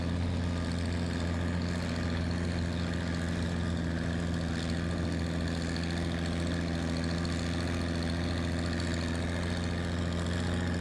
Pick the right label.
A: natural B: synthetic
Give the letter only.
A